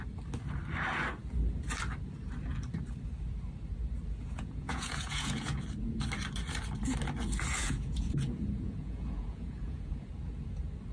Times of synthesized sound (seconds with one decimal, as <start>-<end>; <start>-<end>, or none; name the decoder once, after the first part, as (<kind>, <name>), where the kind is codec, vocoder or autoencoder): 4.2-5.6 (vocoder, Vocos); 7.6-10.1